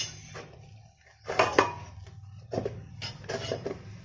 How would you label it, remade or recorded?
recorded